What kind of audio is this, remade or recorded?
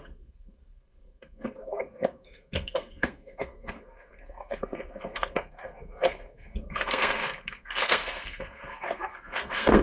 remade